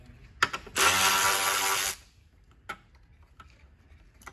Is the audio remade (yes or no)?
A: no